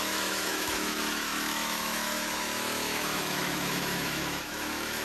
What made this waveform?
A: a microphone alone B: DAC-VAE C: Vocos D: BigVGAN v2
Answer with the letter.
B